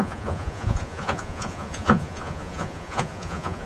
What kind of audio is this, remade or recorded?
remade